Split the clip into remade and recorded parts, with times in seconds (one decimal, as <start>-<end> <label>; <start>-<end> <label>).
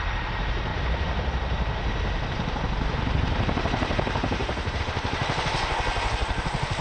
0.0-0.7 recorded; 0.7-4.8 remade; 4.8-5.9 recorded; 5.9-6.8 remade